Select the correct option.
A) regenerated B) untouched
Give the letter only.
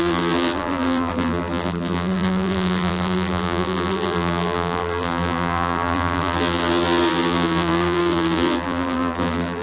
A